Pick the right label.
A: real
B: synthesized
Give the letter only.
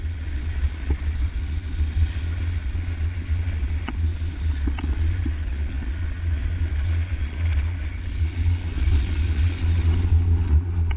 B